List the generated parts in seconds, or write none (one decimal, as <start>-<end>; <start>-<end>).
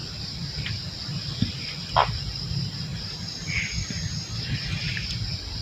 0.0-2.9; 4.5-5.6